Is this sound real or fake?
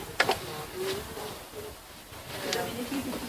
real